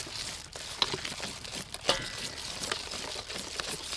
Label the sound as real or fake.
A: real